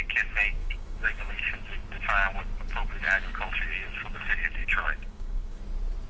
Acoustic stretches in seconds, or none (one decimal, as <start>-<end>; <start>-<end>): 0.0-0.6; 1.3-4.6; 5.6-6.1